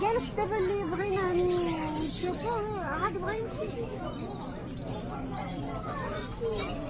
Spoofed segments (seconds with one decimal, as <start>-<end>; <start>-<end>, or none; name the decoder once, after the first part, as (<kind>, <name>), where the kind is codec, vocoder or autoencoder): 2.2-4.0 (autoencoder, DAC-VAE)